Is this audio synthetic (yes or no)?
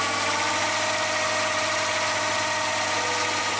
no